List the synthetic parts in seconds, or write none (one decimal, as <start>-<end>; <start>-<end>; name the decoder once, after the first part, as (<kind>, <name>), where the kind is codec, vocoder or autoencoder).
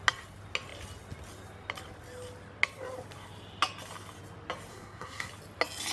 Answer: 4.7-5.3 (codec, SNAC)